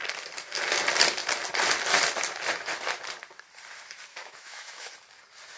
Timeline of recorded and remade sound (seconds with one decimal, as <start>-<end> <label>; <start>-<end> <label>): 0.0-4.1 recorded; 4.1-4.9 remade; 4.9-5.6 recorded